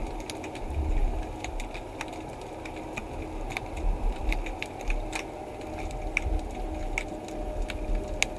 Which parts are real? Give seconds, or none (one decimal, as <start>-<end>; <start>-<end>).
0.0-8.4